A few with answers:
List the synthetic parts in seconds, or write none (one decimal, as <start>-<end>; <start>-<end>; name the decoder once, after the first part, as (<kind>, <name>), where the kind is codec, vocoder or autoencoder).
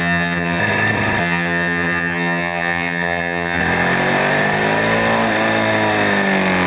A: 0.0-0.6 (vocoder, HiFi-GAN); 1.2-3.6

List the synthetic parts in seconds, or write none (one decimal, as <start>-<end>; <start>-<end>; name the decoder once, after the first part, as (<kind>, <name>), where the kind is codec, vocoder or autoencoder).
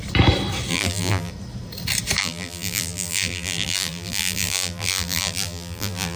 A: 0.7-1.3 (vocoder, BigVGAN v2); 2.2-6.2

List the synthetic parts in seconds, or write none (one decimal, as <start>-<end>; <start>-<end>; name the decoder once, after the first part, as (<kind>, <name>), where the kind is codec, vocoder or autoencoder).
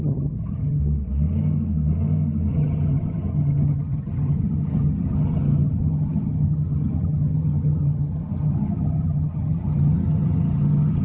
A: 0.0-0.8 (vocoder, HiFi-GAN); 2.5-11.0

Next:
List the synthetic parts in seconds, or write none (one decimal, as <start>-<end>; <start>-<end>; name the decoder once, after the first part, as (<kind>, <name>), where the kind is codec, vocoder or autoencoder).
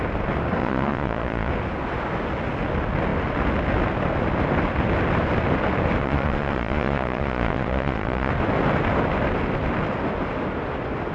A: 0.6-1.5 (vocoder, Vocos); 6.0-8.3